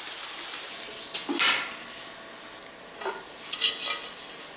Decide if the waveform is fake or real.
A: real